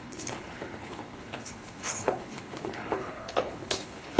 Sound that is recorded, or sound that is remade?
remade